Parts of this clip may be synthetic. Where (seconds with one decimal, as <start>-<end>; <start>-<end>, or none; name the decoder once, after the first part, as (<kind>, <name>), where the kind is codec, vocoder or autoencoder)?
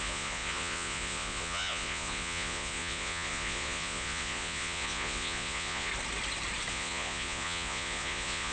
0.0-5.9 (vocoder, Vocos); 6.7-8.5